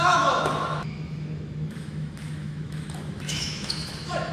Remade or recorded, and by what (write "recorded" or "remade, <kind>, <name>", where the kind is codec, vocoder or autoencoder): remade, autoencoder, DAC-VAE